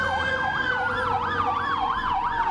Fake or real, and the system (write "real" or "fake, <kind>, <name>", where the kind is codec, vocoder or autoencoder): fake, vocoder, Vocos